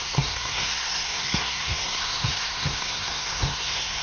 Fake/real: fake